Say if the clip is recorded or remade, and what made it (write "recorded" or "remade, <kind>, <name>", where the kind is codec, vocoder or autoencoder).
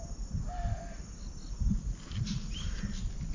recorded